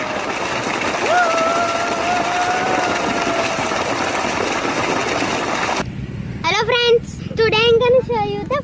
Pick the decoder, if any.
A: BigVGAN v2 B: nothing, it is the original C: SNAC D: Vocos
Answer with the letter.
B